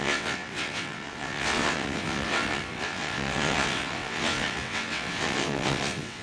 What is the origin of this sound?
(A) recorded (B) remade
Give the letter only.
B